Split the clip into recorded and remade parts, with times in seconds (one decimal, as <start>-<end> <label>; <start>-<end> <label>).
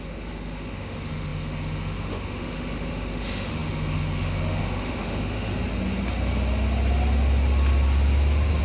0.0-5.5 remade; 5.5-8.6 recorded